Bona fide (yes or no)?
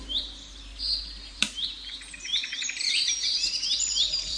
no